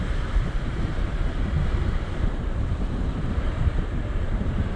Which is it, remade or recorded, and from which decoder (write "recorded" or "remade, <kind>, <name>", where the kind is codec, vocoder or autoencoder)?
remade, vocoder, BigVGAN v2